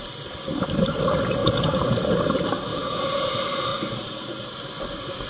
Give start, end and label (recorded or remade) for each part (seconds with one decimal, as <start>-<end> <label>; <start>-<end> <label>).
0.0-1.4 recorded; 1.4-2.0 remade; 2.0-2.7 recorded; 2.7-3.3 remade; 3.3-5.3 recorded